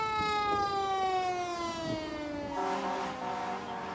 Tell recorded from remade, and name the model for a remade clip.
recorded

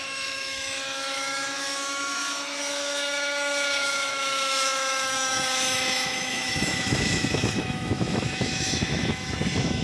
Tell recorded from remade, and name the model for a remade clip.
remade, autoencoder, DAC-VAE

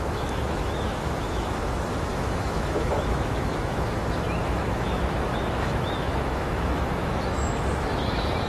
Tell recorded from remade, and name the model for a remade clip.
remade, autoencoder, DAC-VAE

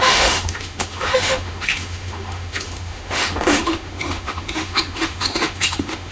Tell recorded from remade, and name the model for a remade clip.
remade, autoencoder, DAC-VAE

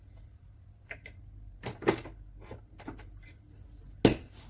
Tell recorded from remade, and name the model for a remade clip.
recorded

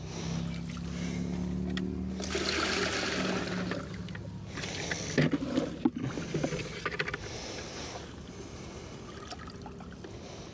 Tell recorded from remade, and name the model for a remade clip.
recorded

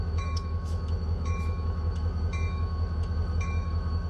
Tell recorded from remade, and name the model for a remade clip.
remade, autoencoder, DAC-VAE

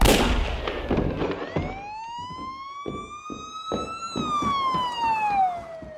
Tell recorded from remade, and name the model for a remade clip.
recorded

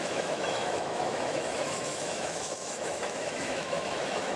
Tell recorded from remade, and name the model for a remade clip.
remade, autoencoder, DAC-VAE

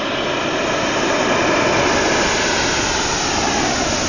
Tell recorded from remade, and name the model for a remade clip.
recorded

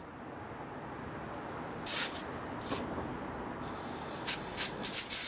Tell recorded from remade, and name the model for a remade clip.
recorded